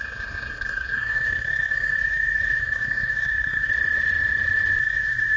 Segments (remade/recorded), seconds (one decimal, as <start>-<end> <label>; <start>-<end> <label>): 0.0-3.7 remade; 3.7-4.8 recorded; 4.8-5.4 remade